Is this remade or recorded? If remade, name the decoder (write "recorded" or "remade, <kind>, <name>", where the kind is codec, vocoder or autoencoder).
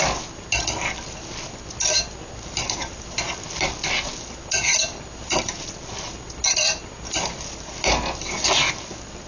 recorded